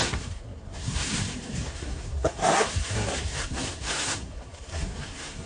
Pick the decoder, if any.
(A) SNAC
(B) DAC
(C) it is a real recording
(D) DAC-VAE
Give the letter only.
A